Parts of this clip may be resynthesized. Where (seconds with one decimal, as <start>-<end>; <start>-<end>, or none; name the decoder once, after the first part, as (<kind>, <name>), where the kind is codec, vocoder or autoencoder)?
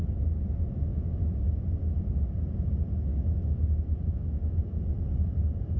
0.9-1.4 (autoencoder, DAC-VAE); 3.1-4.9